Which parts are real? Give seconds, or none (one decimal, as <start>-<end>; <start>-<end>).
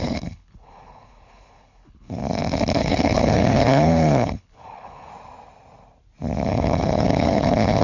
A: 2.2-2.8; 5.1-6.5